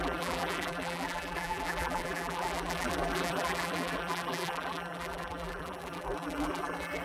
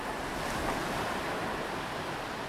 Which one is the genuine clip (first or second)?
second